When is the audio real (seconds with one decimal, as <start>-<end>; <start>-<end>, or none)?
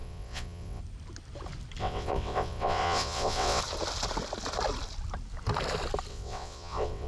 0.8-1.8; 3.6-6.1